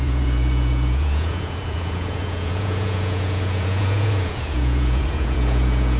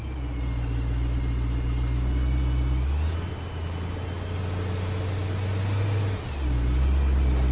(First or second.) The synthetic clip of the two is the first